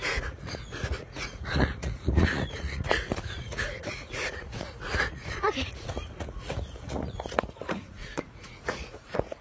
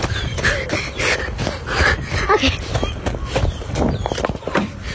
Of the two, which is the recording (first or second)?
second